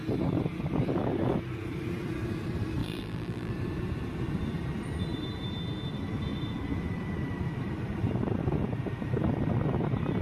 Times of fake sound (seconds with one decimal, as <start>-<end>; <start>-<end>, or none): 2.8-3.5